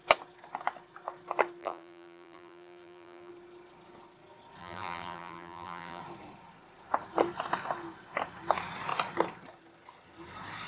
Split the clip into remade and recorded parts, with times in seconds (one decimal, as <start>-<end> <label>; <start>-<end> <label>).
0.0-1.6 recorded; 1.6-3.3 remade; 3.3-4.6 recorded; 4.6-6.0 remade; 6.0-10.7 recorded